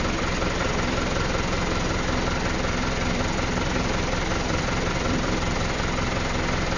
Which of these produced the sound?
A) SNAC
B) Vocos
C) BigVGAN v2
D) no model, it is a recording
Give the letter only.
C